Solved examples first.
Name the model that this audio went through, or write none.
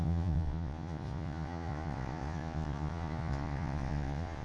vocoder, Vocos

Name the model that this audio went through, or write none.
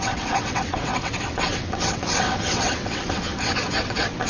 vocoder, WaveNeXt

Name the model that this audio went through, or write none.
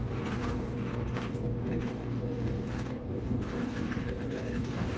codec, DAC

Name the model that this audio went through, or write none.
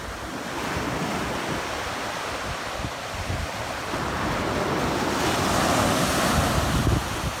none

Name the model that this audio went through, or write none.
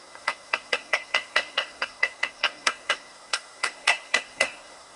codec, SNAC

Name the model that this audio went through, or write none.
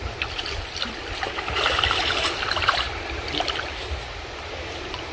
vocoder, BigVGAN v2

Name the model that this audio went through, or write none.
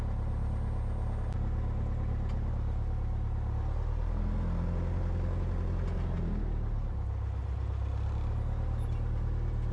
none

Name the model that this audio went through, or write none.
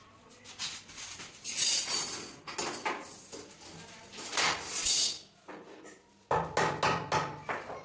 none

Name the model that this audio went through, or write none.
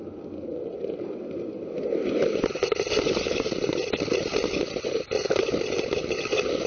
none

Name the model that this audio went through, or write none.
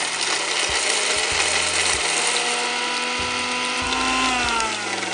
none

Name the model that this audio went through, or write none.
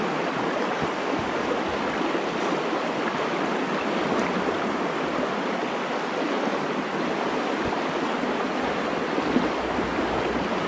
none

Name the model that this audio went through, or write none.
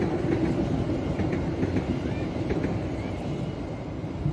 none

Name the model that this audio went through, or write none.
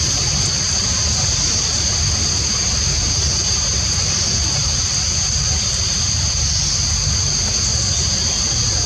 none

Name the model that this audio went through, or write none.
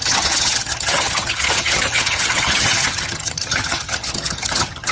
vocoder, HiFi-GAN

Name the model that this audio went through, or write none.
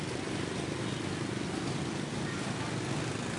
none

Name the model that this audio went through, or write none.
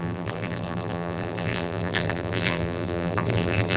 vocoder, BigVGAN v2